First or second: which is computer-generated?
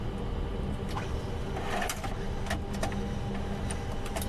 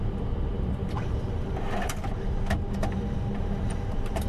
second